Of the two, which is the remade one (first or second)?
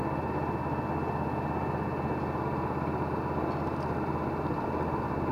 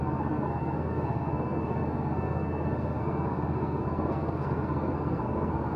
second